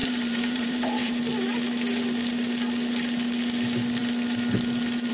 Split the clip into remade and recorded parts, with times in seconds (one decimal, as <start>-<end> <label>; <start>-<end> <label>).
0.0-1.2 remade; 1.2-5.1 recorded

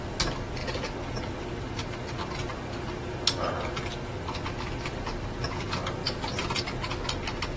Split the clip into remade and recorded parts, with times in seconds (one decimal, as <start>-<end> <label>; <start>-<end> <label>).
0.0-6.0 recorded; 6.0-6.6 remade; 6.6-7.6 recorded

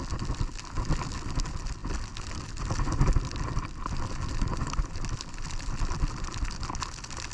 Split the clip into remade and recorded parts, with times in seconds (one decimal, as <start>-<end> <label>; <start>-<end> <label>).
0.0-7.3 recorded

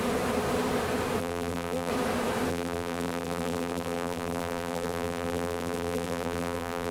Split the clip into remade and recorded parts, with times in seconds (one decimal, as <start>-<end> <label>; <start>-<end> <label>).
0.0-1.2 recorded; 1.2-1.9 remade; 1.9-2.5 recorded; 2.5-6.9 remade

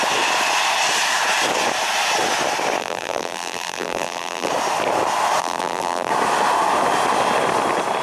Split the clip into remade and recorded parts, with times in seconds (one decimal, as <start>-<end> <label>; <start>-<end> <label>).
0.0-2.8 recorded; 2.8-4.5 remade; 4.5-5.4 recorded; 5.4-6.1 remade; 6.1-8.0 recorded

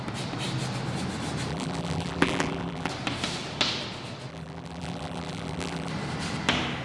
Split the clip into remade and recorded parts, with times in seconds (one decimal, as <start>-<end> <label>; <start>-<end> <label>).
0.0-1.5 recorded; 1.5-2.9 remade; 2.9-4.3 recorded; 4.3-5.9 remade; 5.9-6.8 recorded

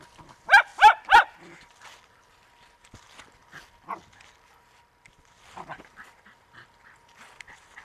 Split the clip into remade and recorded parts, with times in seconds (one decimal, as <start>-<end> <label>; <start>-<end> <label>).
0.0-0.7 recorded; 0.7-1.7 remade; 1.7-7.8 recorded